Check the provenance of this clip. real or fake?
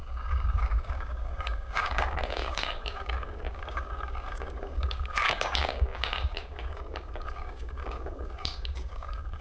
fake